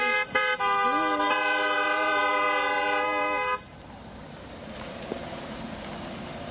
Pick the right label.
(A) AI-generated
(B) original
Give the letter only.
A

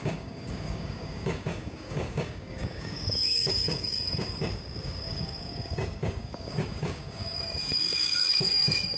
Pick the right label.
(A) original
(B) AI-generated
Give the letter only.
B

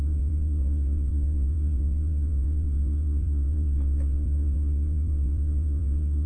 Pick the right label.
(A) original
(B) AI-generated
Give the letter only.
B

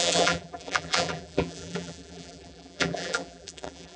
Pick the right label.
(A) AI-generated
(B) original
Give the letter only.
A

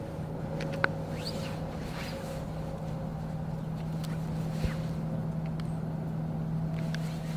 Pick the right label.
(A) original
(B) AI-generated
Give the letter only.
A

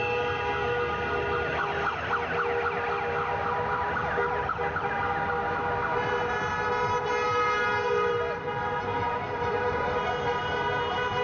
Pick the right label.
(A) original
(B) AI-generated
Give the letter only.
A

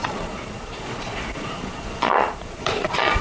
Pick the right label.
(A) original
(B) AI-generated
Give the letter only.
B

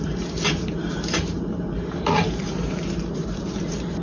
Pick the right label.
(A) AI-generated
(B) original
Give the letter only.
A